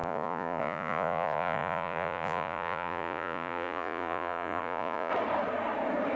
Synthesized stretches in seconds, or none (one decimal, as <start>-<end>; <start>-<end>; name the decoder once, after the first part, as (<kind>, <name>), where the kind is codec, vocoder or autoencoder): 0.0-5.1 (vocoder, Vocos)